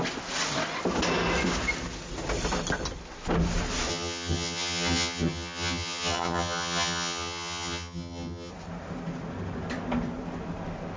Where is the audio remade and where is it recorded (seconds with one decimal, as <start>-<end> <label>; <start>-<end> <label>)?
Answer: 0.0-3.9 recorded; 3.9-8.5 remade; 8.5-11.0 recorded